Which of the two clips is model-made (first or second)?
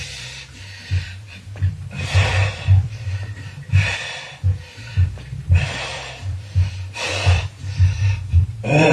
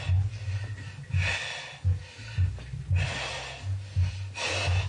first